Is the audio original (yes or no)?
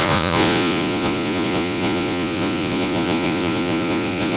no